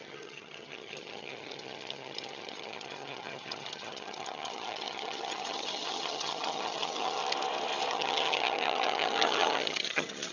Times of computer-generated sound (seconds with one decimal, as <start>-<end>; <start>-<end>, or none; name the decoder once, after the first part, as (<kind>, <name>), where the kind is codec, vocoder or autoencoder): 0.0-7.2 (vocoder, HiFi-GAN); 7.9-10.3